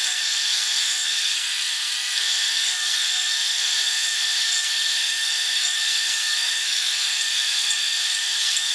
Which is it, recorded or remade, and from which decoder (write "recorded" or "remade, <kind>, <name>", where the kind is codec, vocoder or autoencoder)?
remade, codec, SNAC